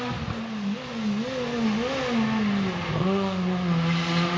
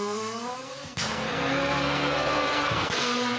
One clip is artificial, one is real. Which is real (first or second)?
first